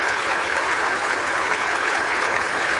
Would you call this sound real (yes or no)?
no